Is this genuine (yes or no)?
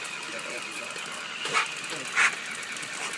yes